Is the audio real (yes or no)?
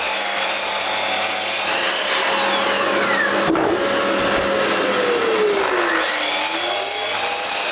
yes